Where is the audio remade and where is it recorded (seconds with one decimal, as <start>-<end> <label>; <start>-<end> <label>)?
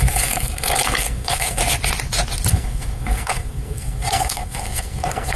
0.0-1.6 remade; 1.6-2.5 recorded; 2.5-5.4 remade